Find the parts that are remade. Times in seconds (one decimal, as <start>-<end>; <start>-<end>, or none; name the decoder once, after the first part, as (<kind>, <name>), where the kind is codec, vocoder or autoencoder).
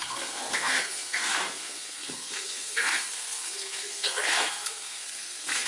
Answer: 0.0-5.7 (codec, SNAC)